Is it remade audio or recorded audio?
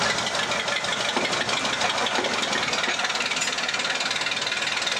recorded